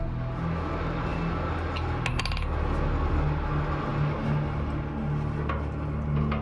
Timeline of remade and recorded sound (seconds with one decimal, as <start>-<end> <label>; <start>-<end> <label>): 0.0-6.4 recorded